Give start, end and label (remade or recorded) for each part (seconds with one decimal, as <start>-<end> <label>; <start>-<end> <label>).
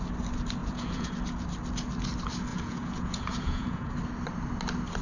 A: 0.0-0.6 recorded; 0.6-1.1 remade; 1.1-2.5 recorded; 2.5-3.9 remade; 3.9-5.0 recorded